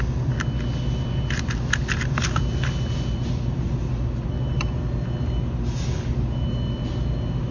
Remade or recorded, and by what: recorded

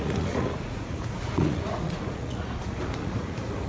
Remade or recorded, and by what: remade, vocoder, Vocos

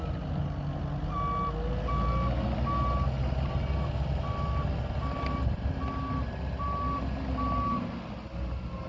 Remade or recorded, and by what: recorded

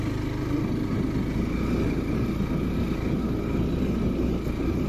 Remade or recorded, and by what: recorded